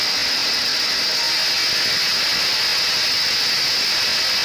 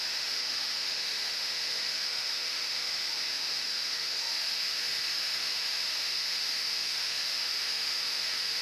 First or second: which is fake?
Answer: second